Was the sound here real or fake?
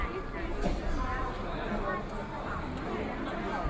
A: real